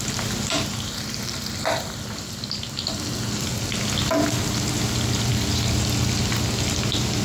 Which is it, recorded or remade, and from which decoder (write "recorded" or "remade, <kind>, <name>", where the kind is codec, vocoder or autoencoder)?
recorded